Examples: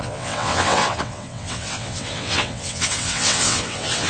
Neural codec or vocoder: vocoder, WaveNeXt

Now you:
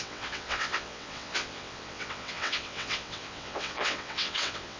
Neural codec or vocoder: vocoder, WaveNeXt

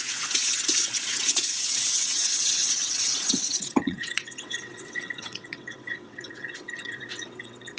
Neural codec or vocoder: vocoder, WaveNeXt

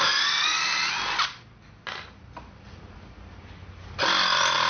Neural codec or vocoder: none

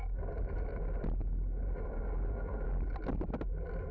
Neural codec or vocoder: none